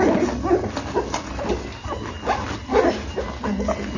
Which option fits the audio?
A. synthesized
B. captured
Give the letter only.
B